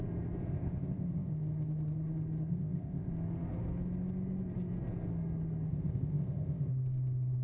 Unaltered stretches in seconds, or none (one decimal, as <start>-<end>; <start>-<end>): 0.0-0.5; 1.3-2.5; 3.1-5.7; 6.7-7.4

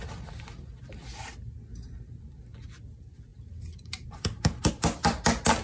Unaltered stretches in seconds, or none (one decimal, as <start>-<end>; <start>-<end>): 0.0-5.6